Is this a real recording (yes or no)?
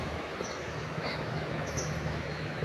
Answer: no